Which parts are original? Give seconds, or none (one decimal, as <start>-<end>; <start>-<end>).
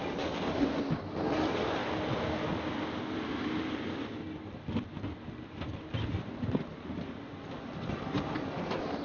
0.0-9.0